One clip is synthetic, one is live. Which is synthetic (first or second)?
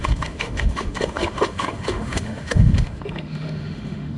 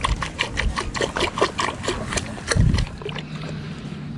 first